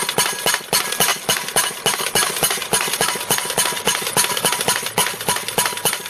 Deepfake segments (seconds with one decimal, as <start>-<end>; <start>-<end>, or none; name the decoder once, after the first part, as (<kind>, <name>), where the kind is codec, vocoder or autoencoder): none